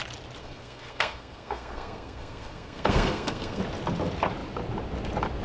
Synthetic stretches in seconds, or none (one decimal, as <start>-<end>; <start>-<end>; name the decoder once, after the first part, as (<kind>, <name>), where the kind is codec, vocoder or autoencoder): 0.4-3.6 (codec, SNAC)